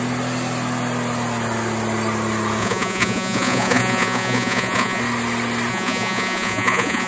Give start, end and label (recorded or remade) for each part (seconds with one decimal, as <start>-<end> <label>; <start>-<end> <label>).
0.0-2.6 recorded; 2.6-5.0 remade; 5.0-5.7 recorded; 5.7-7.1 remade